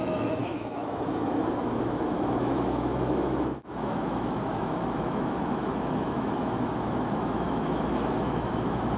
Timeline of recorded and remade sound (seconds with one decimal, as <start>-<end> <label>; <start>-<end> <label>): 0.0-9.0 remade